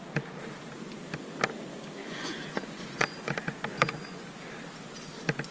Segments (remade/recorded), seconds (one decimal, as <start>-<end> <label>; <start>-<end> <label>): 0.0-2.0 recorded; 2.0-3.3 remade; 3.3-3.7 recorded; 3.7-4.3 remade; 4.3-5.5 recorded